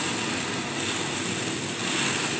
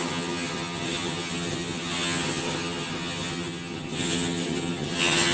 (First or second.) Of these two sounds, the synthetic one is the second